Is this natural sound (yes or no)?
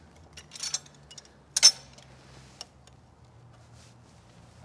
yes